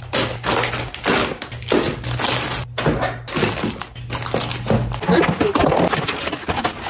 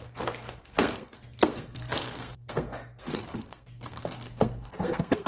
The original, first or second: first